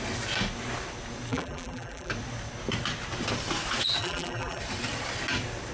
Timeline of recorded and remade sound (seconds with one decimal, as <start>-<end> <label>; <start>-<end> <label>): 0.0-1.3 recorded; 1.3-2.1 remade; 2.1-4.0 recorded; 4.0-4.6 remade; 4.6-5.7 recorded